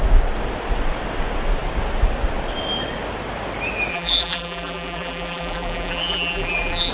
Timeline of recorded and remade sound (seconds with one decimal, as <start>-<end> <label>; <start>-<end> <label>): 0.0-3.9 recorded; 3.9-6.9 remade